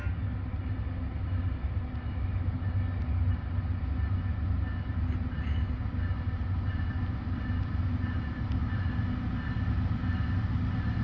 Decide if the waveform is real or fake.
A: real